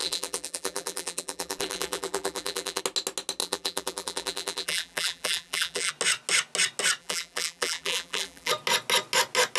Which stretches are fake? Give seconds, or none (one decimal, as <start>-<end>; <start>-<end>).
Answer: 0.0-2.8; 3.4-5.9; 7.0-8.5